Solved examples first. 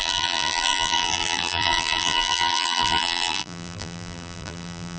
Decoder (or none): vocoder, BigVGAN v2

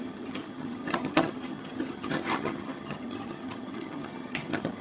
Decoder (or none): vocoder, HiFi-GAN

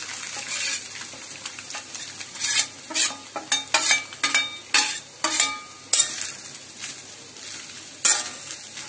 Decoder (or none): none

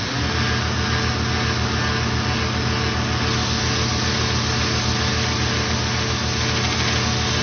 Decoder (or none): none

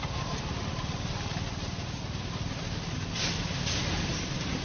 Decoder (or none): none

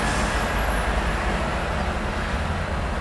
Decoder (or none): none